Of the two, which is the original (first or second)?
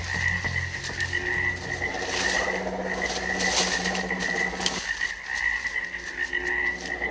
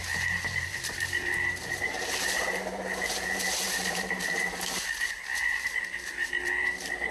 first